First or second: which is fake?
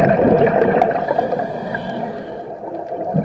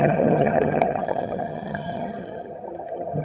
second